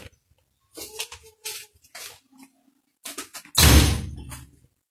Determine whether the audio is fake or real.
real